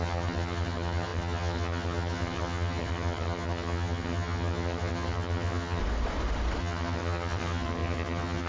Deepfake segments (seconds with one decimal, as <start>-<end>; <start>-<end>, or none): 0.0-5.8; 6.6-8.5